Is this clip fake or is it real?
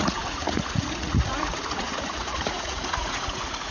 fake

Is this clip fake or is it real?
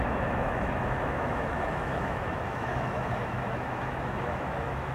fake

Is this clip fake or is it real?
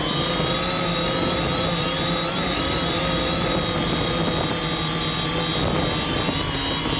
real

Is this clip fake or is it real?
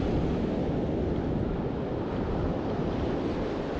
real